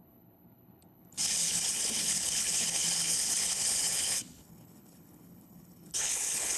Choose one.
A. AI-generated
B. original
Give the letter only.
A